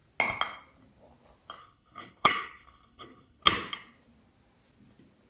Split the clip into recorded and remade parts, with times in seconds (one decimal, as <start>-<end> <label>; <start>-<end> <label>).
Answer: 0.0-1.6 recorded; 1.6-3.4 remade; 3.4-5.3 recorded